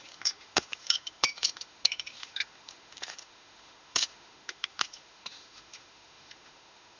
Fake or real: fake